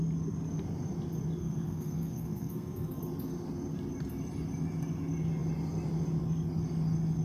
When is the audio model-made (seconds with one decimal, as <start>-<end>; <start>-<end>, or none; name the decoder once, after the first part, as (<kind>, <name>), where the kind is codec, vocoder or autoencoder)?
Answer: 1.4-3.0 (codec, SNAC)